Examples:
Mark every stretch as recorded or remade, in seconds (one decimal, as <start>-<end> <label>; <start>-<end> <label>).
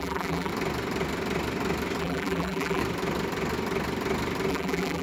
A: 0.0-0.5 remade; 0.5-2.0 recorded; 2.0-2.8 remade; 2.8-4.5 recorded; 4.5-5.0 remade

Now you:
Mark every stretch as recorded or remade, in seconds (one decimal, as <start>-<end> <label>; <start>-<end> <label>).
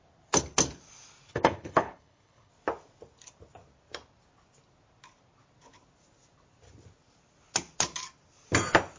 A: 0.0-1.3 recorded; 1.3-2.5 remade; 2.5-9.0 recorded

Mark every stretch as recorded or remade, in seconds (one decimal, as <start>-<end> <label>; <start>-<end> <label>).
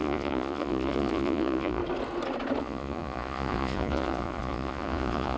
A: 0.0-1.8 remade; 1.8-2.6 recorded; 2.6-5.4 remade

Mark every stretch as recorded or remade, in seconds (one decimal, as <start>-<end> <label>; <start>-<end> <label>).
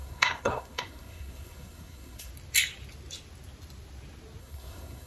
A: 0.0-2.3 remade; 2.3-4.4 recorded; 4.4-5.1 remade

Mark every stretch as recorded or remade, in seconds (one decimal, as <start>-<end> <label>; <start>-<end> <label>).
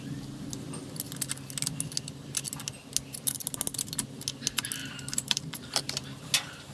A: 0.0-4.8 recorded; 4.8-6.2 remade; 6.2-6.7 recorded